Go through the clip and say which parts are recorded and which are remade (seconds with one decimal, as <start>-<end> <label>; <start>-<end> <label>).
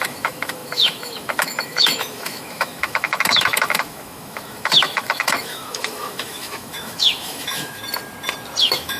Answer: 0.0-7.8 remade; 7.8-8.6 recorded; 8.6-9.0 remade